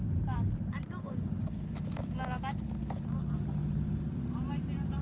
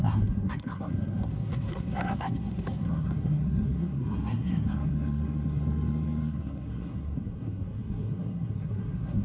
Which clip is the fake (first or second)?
second